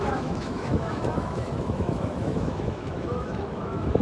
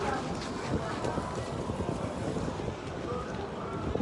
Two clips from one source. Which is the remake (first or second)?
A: first